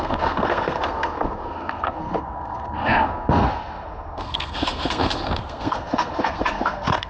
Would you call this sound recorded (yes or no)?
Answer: no